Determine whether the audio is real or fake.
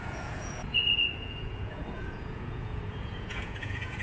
fake